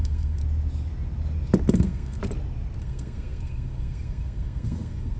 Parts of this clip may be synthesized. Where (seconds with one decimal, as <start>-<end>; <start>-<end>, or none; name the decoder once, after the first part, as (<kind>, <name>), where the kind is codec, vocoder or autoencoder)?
0.0-0.4 (codec, SNAC); 1.7-2.2; 2.8-5.2

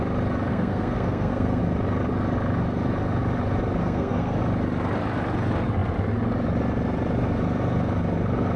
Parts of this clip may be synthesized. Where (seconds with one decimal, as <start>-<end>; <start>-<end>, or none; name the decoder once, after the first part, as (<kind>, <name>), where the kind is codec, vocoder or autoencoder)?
0.5-1.6 (codec, SNAC); 3.8-4.4

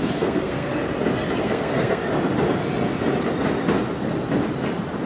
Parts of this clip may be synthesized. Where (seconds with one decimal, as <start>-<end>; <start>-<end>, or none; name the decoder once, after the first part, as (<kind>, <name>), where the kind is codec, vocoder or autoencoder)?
0.0-0.7 (codec, SNAC); 1.4-2.0

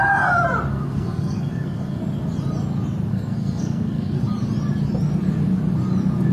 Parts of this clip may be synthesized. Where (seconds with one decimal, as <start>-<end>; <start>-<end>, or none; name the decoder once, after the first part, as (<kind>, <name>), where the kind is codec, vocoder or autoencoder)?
0.7-2.0 (codec, SNAC); 3.1-4.2

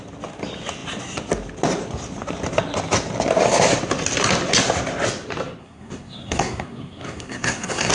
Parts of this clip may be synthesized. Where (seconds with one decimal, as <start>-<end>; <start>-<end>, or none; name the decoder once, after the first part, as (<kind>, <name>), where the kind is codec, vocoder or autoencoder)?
5.6-7.9 (codec, SNAC)

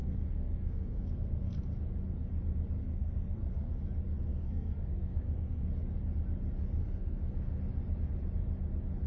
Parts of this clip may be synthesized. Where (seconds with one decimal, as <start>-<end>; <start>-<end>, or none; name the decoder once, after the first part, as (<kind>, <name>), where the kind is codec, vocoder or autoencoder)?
0.0-1.6 (codec, SNAC); 2.8-3.7; 4.3-5.7; 6.8-7.6

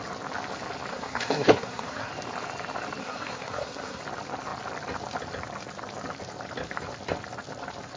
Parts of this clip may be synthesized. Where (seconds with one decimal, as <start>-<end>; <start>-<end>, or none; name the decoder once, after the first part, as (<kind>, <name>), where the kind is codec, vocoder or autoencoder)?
0.9-2.1 (codec, SNAC); 3.0-4.0

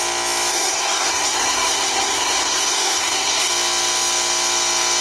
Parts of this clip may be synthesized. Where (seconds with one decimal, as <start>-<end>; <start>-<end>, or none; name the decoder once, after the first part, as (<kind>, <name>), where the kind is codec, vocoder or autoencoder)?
0.5-3.5 (codec, SNAC)